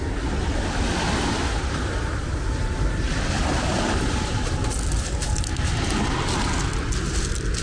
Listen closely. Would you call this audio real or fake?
real